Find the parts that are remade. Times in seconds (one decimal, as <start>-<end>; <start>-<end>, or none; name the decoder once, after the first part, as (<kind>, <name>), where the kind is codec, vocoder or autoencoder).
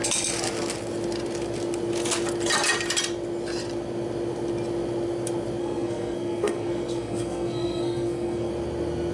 5.6-8.5 (codec, SNAC)